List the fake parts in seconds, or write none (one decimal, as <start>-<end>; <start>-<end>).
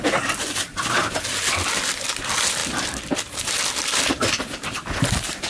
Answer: 0.7-1.3; 2.6-5.5